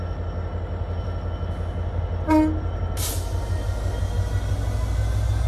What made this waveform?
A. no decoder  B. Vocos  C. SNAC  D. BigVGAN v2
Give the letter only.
A